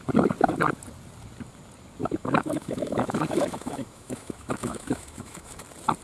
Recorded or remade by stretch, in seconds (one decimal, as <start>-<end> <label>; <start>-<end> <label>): 0.0-2.0 recorded; 2.0-5.6 remade; 5.6-6.0 recorded